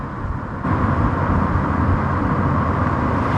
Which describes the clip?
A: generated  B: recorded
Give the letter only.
B